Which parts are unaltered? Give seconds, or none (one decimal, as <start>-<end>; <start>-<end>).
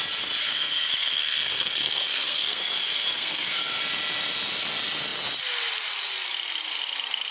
0.0-0.4; 3.8-7.3